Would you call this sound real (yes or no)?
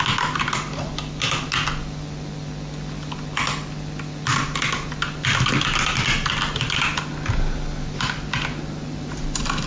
yes